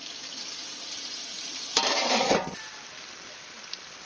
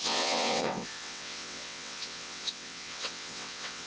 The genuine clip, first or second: first